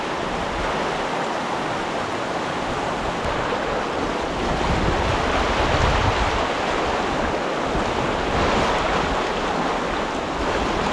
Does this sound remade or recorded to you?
recorded